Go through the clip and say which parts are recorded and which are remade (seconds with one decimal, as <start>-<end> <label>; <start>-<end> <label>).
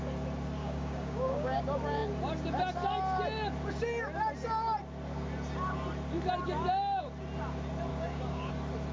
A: 0.0-0.6 recorded; 0.6-1.6 remade; 1.6-7.9 recorded; 7.9-8.5 remade; 8.5-8.9 recorded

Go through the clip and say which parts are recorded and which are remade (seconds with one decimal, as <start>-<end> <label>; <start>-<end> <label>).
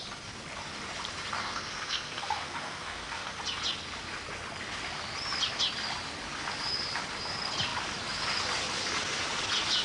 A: 0.0-1.4 recorded; 1.4-3.4 remade; 3.4-9.8 recorded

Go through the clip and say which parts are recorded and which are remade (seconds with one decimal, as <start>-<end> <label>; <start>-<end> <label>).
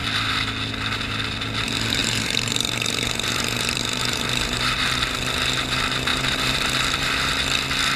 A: 0.0-2.0 recorded; 2.0-4.8 remade; 4.8-6.1 recorded; 6.1-7.3 remade; 7.3-8.0 recorded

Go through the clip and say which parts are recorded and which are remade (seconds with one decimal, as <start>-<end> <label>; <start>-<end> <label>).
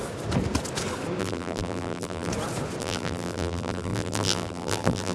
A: 0.0-1.2 recorded; 1.2-2.3 remade; 2.3-2.8 recorded; 2.8-5.1 remade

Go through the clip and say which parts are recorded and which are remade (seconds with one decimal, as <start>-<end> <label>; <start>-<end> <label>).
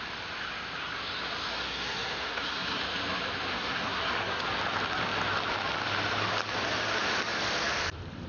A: 0.0-1.5 recorded; 1.5-2.8 remade; 2.8-3.5 recorded; 3.5-4.4 remade; 4.4-8.3 recorded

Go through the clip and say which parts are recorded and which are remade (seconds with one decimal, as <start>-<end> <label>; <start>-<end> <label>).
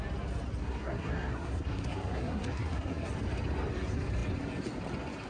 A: 0.0-0.6 recorded; 0.6-3.1 remade; 3.1-5.3 recorded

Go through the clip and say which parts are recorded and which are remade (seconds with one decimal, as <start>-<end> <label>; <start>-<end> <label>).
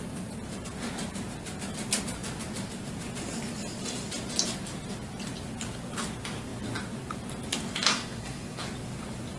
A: 0.0-7.9 recorded; 7.9-8.6 remade; 8.6-9.4 recorded